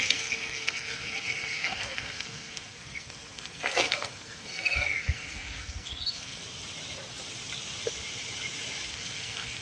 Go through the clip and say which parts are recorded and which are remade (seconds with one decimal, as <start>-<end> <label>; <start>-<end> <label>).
0.0-6.4 remade; 6.4-8.9 recorded; 8.9-9.6 remade